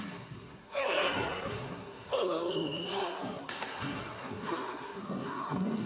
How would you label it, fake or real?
fake